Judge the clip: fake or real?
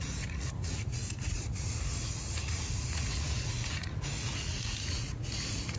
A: fake